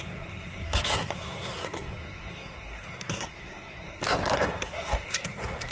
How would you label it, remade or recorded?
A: remade